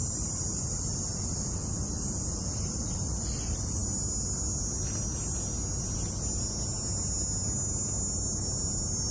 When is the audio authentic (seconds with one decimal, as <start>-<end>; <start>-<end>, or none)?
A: 0.6-9.1